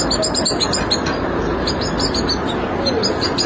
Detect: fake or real real